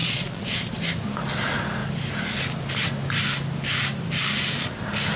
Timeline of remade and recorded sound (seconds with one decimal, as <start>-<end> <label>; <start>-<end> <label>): 0.0-0.7 remade; 0.7-5.2 recorded